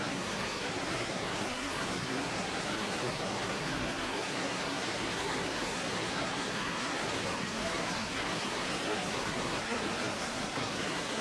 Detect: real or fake fake